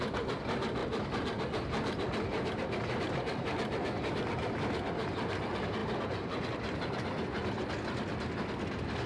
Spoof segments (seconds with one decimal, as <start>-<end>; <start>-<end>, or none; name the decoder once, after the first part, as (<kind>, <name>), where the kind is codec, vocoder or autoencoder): 0.0-5.8 (vocoder, BigVGAN v2); 6.5-9.1

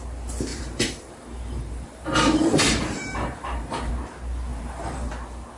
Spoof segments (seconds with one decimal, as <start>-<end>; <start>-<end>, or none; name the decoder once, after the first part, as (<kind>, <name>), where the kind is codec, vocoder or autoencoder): 0.5-3.9 (vocoder, BigVGAN v2); 4.5-5.1

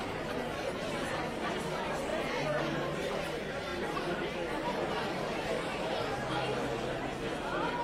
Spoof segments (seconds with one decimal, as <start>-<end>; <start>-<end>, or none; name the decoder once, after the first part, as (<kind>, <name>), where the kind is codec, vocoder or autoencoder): none

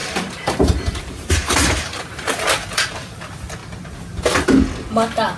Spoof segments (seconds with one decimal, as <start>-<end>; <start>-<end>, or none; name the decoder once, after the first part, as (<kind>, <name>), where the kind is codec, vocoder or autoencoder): 0.0-3.2 (vocoder, BigVGAN v2)

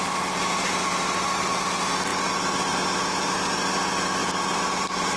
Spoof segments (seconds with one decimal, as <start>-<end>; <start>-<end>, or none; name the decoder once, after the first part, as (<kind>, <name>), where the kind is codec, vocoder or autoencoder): 4.2-5.2 (vocoder, BigVGAN v2)

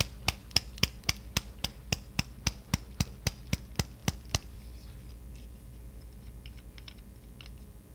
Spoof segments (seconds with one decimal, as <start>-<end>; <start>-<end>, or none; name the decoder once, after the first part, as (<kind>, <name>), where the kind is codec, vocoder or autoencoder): 4.0-5.1 (vocoder, BigVGAN v2)

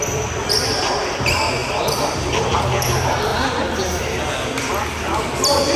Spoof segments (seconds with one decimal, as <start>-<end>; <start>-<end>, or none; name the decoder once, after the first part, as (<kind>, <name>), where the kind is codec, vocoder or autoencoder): 1.6-2.2 (vocoder, BigVGAN v2); 3.3-4.2

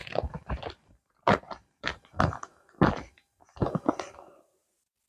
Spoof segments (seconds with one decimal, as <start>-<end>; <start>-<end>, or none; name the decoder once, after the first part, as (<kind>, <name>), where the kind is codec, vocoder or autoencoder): 0.0-2.0 (vocoder, BigVGAN v2)